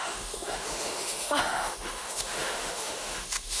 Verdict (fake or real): fake